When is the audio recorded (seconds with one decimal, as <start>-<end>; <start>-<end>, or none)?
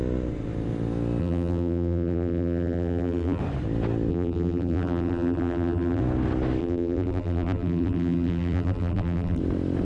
0.0-1.2; 3.4-4.1; 6.0-6.6; 9.4-9.8